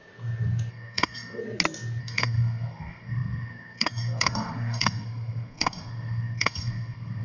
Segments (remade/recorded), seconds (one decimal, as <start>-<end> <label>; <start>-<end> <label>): 0.0-0.7 recorded; 0.7-1.4 remade; 1.4-2.0 recorded; 2.0-7.2 remade